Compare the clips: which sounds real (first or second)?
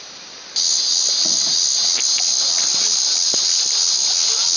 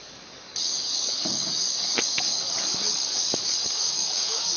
first